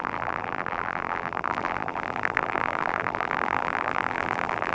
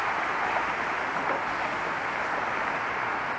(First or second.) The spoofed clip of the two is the first